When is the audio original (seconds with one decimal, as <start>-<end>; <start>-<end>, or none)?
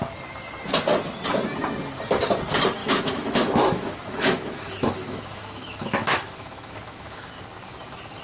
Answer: 0.0-2.8; 7.3-8.2